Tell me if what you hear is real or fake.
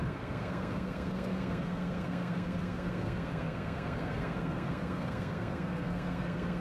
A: fake